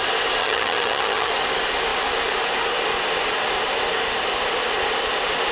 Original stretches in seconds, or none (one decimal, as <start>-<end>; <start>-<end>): 0.0-0.4; 1.3-5.5